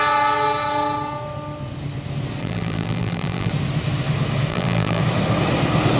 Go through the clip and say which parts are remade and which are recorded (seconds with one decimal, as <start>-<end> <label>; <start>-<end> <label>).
0.0-2.4 recorded; 2.4-3.5 remade; 3.5-4.5 recorded; 4.5-5.0 remade; 5.0-6.0 recorded